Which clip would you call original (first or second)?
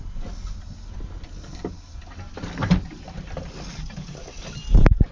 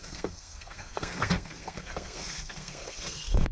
first